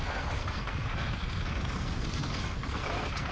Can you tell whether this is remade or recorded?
remade